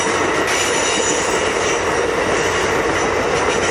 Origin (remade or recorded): recorded